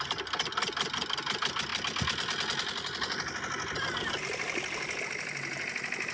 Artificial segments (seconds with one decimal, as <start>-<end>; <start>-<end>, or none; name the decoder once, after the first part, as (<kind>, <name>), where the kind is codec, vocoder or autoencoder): none